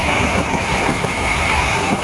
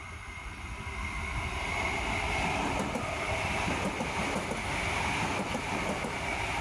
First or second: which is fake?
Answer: first